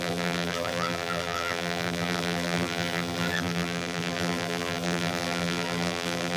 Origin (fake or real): fake